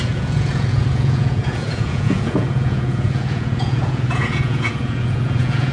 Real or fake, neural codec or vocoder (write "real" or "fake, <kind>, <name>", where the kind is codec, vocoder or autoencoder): fake, vocoder, Vocos